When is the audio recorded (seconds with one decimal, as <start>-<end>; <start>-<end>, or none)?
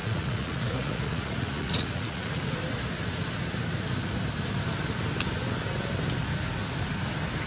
2.4-7.5